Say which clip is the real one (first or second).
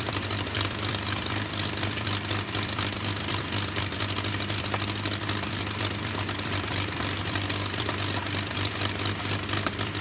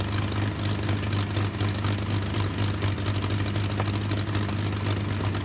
second